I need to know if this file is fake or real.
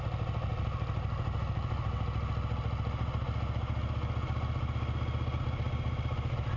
real